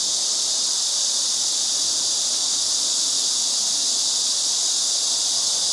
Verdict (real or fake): real